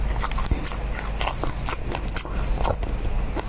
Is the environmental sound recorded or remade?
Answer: recorded